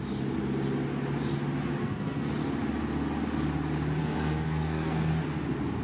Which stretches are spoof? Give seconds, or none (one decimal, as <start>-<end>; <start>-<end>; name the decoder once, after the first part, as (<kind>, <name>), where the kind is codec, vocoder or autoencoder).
1.8-2.3 (codec, SNAC); 4.0-5.1